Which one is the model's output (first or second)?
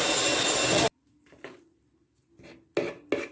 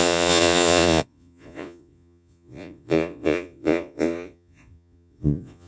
second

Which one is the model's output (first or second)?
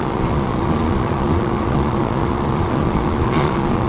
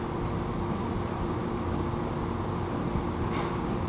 first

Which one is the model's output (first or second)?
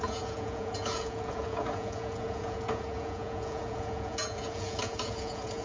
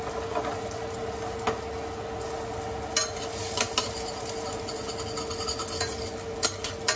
first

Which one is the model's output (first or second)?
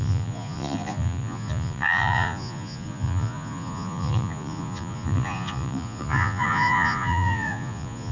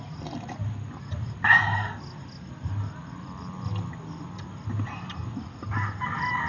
first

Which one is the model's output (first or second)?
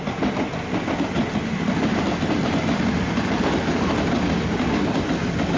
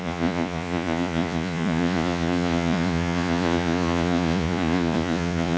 second